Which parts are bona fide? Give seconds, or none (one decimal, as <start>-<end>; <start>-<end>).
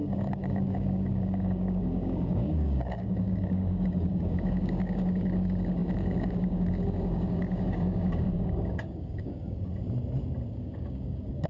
9.7-10.5